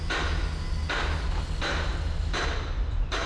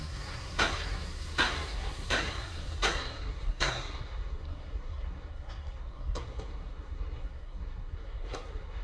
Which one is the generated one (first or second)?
second